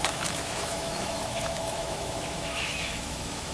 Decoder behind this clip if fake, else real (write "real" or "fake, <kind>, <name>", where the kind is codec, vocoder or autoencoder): fake, autoencoder, DAC-VAE